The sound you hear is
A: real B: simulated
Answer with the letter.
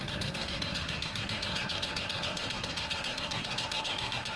B